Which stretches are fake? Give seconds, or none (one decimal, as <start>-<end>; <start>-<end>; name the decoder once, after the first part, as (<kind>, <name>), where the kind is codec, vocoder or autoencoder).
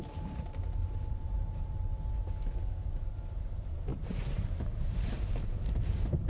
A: 0.0-1.9 (vocoder, BigVGAN v2); 3.4-6.3